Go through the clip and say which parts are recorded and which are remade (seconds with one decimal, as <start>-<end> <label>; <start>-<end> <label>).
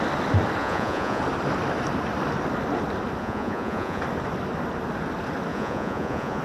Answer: 0.0-0.6 recorded; 0.6-1.2 remade; 1.2-3.2 recorded; 3.2-4.0 remade; 4.0-5.5 recorded; 5.5-6.4 remade